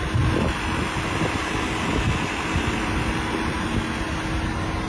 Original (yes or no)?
yes